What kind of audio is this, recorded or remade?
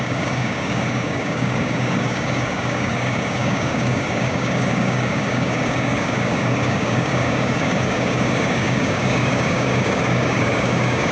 remade